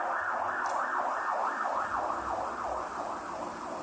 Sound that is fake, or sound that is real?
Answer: real